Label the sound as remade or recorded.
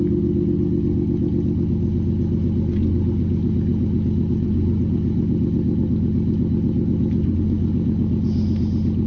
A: recorded